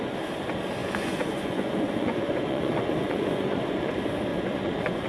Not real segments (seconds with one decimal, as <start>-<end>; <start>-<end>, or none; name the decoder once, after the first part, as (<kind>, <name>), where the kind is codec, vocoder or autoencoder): 0.8-3.9 (vocoder, Vocos); 4.3-5.1